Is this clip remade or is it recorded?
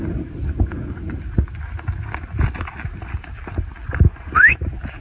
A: recorded